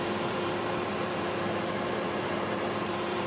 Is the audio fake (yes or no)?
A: yes